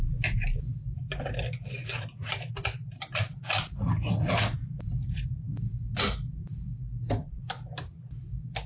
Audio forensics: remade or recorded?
recorded